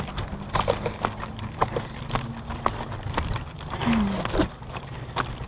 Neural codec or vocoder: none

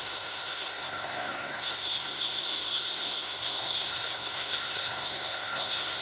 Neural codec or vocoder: codec, SNAC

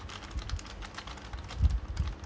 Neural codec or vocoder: none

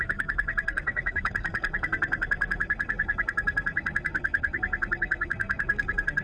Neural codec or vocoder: codec, SNAC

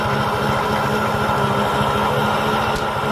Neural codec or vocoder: none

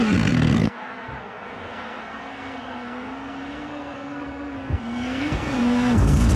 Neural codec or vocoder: codec, SNAC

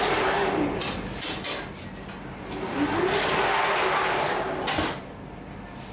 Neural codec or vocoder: none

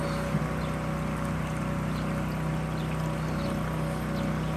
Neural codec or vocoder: none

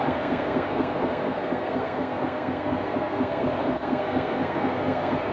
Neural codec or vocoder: codec, SNAC